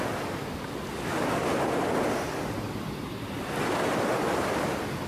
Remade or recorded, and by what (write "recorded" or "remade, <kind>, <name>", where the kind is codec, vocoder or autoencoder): recorded